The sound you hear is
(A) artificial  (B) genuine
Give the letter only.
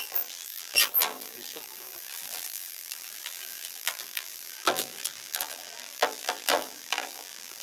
A